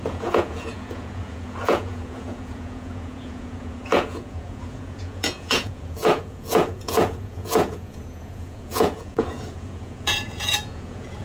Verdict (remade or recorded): remade